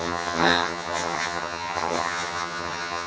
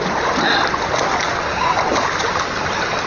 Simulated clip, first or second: first